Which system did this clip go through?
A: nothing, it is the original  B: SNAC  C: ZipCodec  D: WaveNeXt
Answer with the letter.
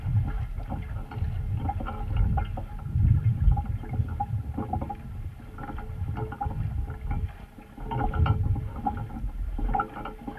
A